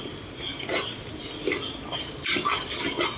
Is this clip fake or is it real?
real